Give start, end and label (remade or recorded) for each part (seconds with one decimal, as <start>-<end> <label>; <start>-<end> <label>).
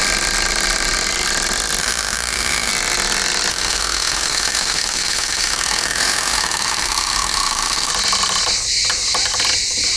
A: 0.0-1.8 recorded; 1.8-2.7 remade; 2.7-3.5 recorded; 3.5-7.9 remade; 7.9-10.0 recorded